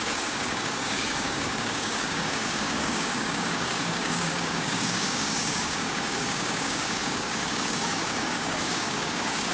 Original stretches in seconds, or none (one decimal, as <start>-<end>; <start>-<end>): none